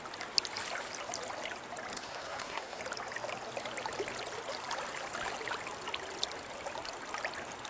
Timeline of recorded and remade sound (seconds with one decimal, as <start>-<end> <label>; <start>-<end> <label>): 0.0-1.9 recorded; 1.9-2.8 remade; 2.8-7.7 recorded